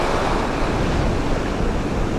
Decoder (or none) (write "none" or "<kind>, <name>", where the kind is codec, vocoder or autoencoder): none